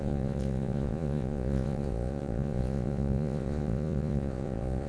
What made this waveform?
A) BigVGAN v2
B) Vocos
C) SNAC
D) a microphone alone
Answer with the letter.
B